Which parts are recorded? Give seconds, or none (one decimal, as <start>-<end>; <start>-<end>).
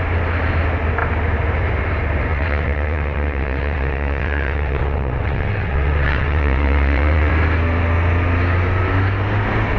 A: 0.0-2.3; 7.3-9.8